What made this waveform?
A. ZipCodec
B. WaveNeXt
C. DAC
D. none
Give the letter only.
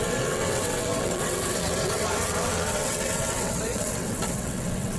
B